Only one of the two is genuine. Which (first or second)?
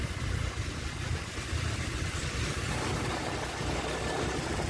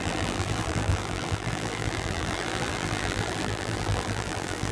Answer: first